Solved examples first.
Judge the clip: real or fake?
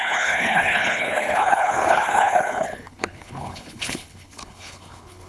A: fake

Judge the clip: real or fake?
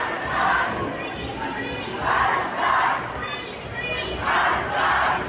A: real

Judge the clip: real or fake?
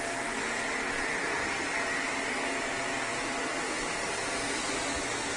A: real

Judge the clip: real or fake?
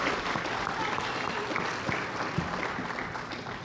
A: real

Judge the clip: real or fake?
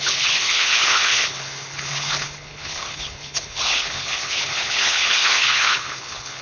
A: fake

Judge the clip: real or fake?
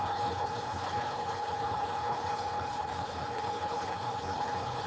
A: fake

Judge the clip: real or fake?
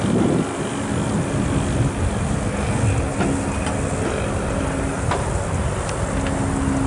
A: real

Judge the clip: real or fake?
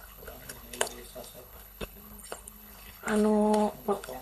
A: fake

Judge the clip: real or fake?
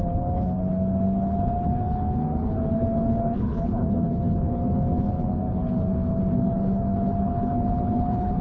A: fake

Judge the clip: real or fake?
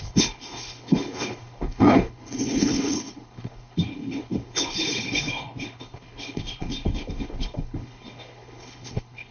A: fake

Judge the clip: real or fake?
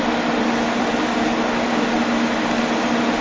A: real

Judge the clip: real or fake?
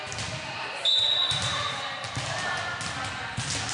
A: real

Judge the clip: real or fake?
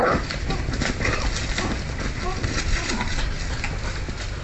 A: real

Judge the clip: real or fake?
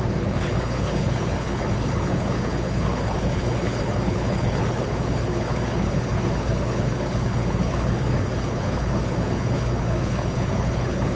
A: fake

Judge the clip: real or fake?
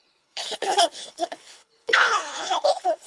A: fake